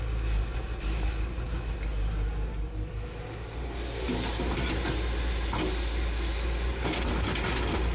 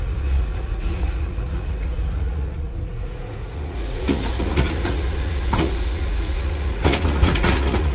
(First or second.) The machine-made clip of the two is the second